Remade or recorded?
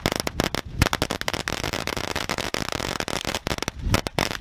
recorded